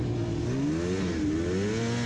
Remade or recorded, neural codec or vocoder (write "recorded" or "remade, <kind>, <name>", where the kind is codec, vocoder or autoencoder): recorded